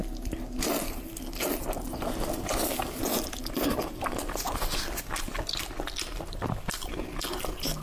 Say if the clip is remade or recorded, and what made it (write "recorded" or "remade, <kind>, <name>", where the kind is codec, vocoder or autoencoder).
recorded